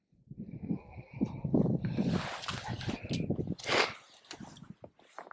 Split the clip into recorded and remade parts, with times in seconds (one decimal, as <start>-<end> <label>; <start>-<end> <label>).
0.0-0.6 recorded; 0.6-1.1 remade; 1.1-5.3 recorded

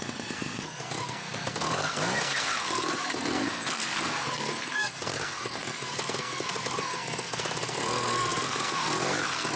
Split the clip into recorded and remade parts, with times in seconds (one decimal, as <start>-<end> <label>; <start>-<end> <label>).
0.0-9.6 remade

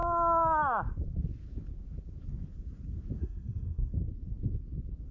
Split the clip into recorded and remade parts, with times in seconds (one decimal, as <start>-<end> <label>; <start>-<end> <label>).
0.0-3.2 recorded; 3.2-3.9 remade; 3.9-5.1 recorded

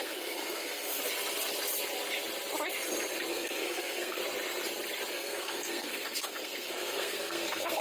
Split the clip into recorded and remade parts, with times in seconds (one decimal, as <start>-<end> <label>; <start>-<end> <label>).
0.0-1.0 remade; 1.0-3.3 recorded; 3.3-4.2 remade; 4.2-5.1 recorded; 5.1-7.8 remade

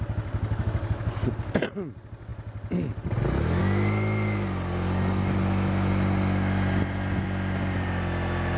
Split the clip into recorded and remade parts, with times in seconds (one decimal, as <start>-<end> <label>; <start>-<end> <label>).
0.0-8.6 recorded

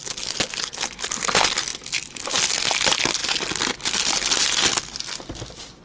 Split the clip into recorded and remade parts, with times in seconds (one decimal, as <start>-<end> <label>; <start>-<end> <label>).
0.0-5.8 recorded

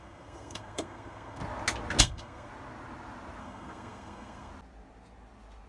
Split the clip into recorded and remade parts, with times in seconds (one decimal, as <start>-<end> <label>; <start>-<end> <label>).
0.0-1.4 remade; 1.4-2.0 recorded; 2.0-2.5 remade; 2.5-3.4 recorded; 3.4-4.5 remade; 4.5-5.7 recorded

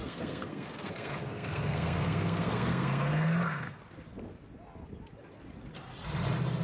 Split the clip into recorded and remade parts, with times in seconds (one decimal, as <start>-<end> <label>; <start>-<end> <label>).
0.0-3.8 remade; 3.8-6.6 recorded